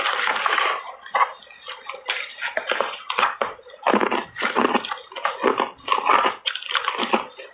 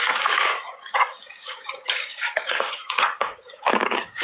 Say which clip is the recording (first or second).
first